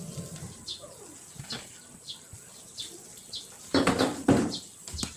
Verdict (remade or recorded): recorded